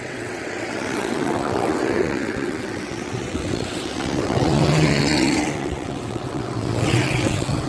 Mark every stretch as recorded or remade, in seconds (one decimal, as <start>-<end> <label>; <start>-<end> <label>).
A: 0.0-7.7 remade